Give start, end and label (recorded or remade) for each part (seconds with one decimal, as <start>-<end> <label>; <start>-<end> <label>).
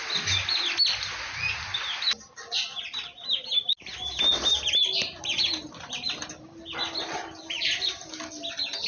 0.0-8.9 recorded